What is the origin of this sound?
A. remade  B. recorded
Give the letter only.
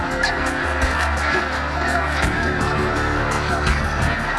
A